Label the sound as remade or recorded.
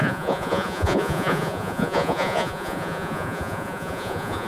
remade